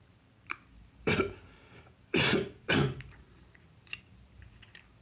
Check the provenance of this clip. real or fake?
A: fake